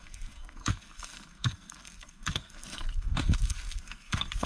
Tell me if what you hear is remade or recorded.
remade